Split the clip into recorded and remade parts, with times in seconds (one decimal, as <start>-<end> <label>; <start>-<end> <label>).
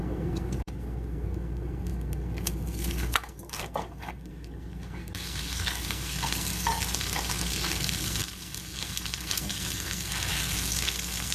0.0-11.3 remade